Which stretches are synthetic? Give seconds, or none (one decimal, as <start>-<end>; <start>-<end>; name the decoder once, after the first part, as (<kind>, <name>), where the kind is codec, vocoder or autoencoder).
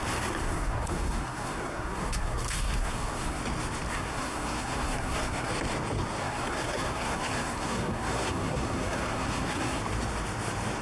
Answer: 0.4-3.4 (codec, SNAC); 3.9-5.5; 6.2-9.8